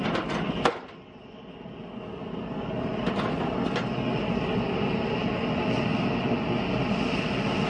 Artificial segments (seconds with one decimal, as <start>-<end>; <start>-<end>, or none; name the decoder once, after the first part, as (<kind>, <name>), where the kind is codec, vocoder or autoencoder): none